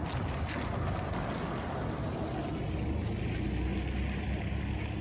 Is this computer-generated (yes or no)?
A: no